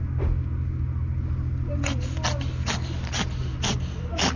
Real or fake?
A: real